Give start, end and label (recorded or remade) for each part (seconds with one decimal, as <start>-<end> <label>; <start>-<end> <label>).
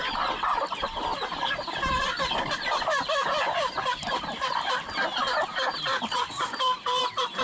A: 0.0-1.1 recorded; 1.1-1.8 remade; 1.8-3.3 recorded; 3.3-4.7 remade; 4.7-5.5 recorded; 5.5-7.0 remade; 7.0-7.4 recorded